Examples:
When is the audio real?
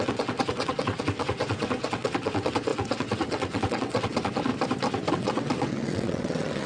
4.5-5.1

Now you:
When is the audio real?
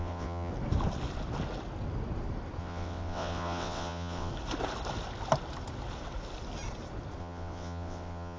0.5-2.6; 4.3-7.2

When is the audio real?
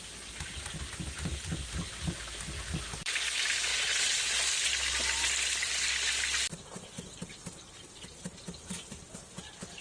0.0-3.7; 4.4-9.8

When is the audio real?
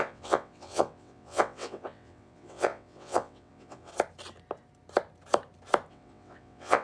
3.9-5.9